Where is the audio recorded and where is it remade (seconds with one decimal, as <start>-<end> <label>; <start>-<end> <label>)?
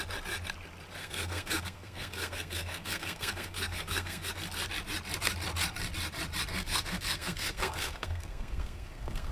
0.0-1.0 recorded; 1.0-4.3 remade; 4.3-6.5 recorded; 6.5-9.3 remade